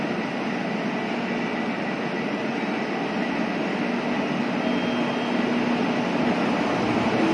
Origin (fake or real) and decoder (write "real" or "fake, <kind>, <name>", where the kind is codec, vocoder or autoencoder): real